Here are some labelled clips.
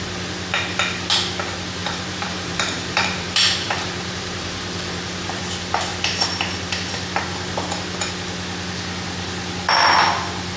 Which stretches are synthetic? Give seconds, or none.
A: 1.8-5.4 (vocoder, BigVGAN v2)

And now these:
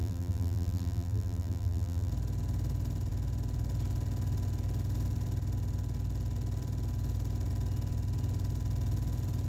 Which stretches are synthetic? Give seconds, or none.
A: 0.0-2.1 (vocoder, BigVGAN v2)

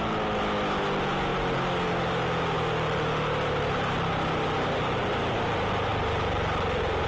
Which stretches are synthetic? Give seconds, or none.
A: none